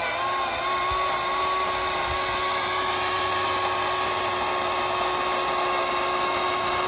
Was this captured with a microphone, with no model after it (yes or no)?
yes